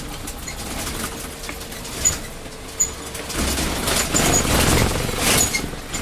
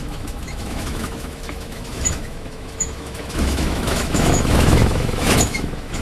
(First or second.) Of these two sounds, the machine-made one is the second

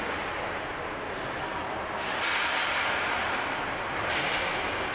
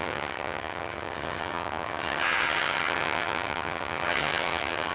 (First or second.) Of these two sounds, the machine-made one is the second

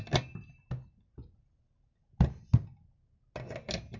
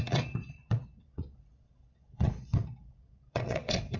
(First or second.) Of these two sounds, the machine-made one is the second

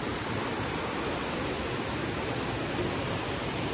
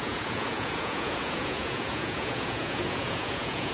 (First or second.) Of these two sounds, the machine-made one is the second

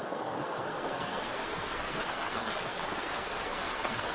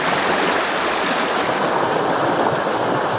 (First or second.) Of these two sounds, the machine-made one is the first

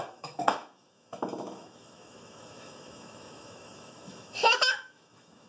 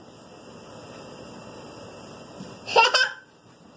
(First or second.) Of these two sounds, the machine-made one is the first